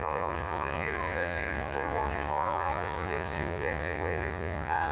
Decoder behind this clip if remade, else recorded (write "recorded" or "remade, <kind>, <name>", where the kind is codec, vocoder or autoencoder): remade, vocoder, Vocos